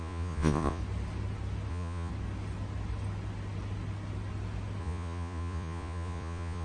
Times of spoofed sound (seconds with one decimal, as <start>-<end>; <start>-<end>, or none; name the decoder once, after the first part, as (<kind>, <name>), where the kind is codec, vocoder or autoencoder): 0.0-0.8 (vocoder, Vocos); 1.7-2.1; 4.8-6.6